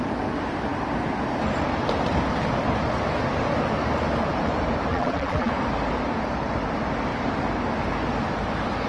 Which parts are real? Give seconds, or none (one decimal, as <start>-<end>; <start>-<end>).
0.0-4.9; 5.5-8.9